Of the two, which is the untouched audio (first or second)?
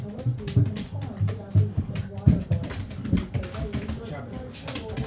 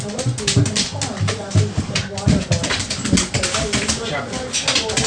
second